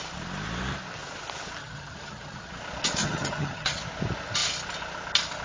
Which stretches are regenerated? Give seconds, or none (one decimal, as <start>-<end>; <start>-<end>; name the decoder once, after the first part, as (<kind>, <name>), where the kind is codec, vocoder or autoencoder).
1.6-2.5 (vocoder, HiFi-GAN); 3.0-3.8